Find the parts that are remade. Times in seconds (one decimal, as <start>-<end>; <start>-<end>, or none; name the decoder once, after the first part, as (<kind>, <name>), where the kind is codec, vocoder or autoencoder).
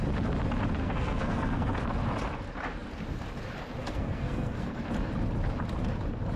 0.8-1.8 (codec, SNAC); 3.8-4.8